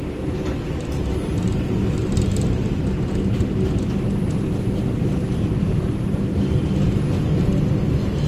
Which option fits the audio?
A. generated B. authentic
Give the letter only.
B